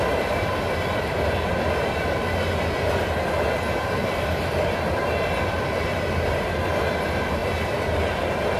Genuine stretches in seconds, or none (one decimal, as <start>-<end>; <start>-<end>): 0.0-8.6